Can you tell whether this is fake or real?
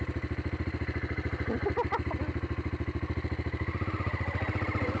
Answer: real